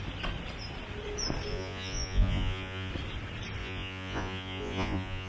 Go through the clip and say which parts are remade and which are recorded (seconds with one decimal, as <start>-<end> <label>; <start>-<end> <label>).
0.0-1.5 recorded; 1.5-2.9 remade; 2.9-3.6 recorded; 3.6-5.3 remade